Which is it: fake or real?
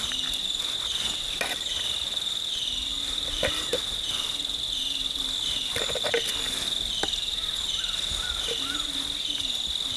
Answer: real